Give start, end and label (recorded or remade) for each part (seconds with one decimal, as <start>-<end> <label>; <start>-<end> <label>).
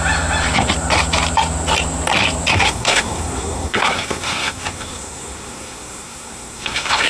0.0-2.5 recorded; 2.5-7.1 remade